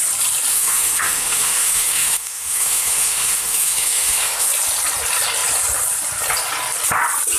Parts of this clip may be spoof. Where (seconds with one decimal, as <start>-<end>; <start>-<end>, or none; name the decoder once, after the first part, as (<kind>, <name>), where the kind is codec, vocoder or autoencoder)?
0.5-4.5 (autoencoder, DAC-VAE)